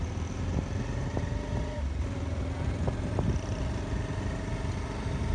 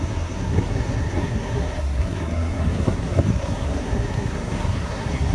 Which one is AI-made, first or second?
second